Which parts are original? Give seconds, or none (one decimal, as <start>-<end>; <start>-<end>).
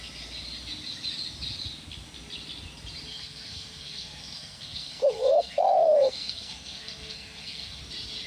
0.0-3.1; 7.8-8.3